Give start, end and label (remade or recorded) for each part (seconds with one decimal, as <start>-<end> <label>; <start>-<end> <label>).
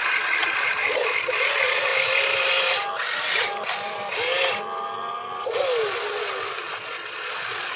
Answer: 0.0-1.9 remade; 1.9-6.6 recorded; 6.6-7.8 remade